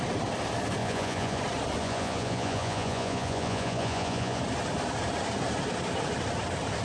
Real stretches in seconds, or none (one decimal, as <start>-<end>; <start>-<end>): 0.0-0.8; 1.4-1.8; 4.4-6.8